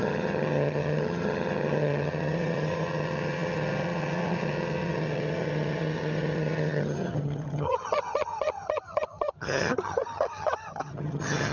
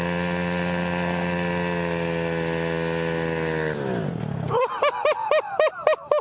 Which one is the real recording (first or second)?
second